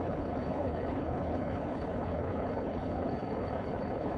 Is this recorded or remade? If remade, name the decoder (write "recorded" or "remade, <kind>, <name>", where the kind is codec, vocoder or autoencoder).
remade, codec, HILCodec